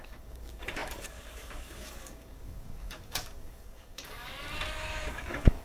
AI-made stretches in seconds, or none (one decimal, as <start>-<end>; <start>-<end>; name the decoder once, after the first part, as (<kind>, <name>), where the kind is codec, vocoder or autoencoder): 0.0-4.3 (codec, DAC); 5.1-5.6